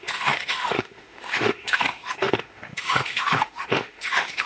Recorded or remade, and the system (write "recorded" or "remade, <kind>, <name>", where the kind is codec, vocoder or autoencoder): remade, autoencoder, DAC-VAE